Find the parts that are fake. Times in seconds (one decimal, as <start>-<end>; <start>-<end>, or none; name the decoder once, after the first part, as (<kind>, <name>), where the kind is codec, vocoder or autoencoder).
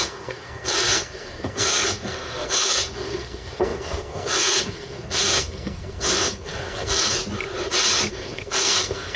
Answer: 0.0-7.2 (codec, SNAC); 8.1-9.2